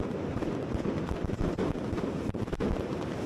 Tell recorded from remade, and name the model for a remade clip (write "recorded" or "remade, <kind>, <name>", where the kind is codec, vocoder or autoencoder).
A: recorded